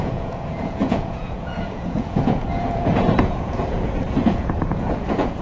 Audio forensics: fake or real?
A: fake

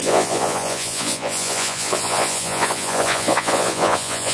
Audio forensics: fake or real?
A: fake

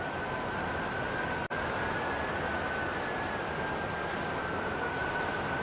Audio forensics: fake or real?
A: real